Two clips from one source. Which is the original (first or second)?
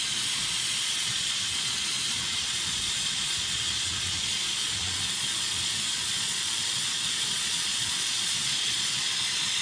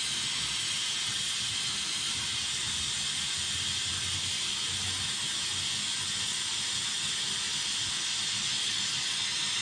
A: second